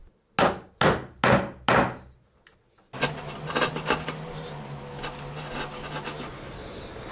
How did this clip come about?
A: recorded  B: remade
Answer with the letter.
A